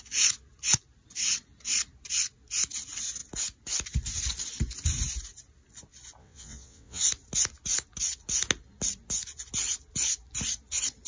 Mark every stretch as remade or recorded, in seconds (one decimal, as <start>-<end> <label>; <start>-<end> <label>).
0.0-6.2 recorded; 6.2-7.0 remade; 7.0-11.1 recorded